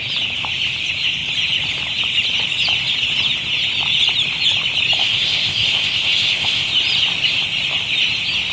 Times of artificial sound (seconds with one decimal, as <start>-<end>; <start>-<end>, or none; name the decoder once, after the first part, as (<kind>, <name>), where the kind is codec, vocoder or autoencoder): 5.0-6.7 (codec, ZipCodec)